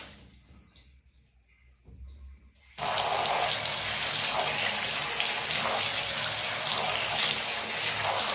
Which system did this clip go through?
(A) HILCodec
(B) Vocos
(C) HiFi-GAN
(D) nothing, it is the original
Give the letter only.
D